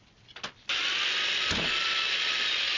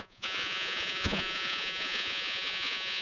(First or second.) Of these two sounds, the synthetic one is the second